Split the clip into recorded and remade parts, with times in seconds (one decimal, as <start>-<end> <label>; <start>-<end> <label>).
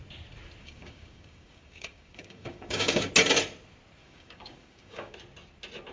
0.0-0.6 recorded; 0.6-3.1 remade; 3.1-4.0 recorded; 4.0-5.1 remade; 5.1-5.9 recorded